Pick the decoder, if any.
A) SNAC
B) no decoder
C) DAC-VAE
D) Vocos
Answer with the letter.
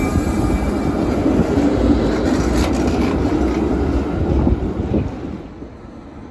B